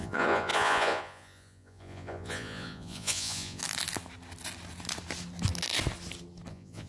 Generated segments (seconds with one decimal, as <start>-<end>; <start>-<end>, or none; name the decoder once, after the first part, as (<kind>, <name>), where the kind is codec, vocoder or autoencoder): 0.0-3.6 (vocoder, Vocos); 6.5-6.9